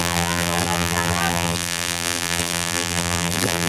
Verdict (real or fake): fake